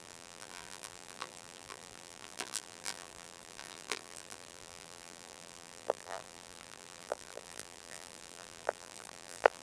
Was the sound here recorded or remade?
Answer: remade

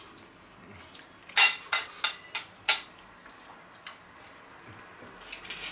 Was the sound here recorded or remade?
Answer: recorded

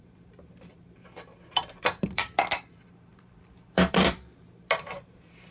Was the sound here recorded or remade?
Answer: remade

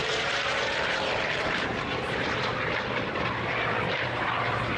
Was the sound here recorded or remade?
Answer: remade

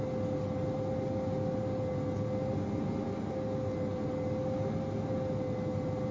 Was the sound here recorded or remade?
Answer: recorded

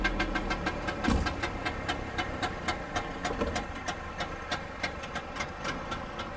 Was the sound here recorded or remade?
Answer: recorded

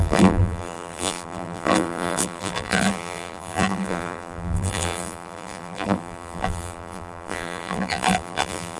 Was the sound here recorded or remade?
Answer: remade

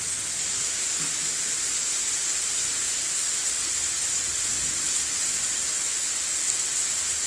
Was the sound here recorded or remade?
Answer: recorded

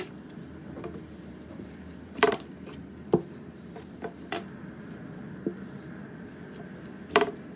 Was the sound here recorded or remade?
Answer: remade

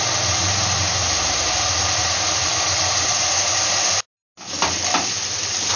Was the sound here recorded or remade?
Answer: recorded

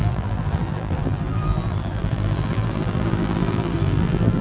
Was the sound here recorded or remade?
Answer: remade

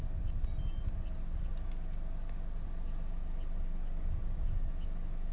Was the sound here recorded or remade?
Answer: recorded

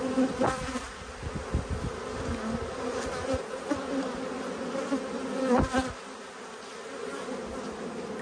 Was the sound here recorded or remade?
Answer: recorded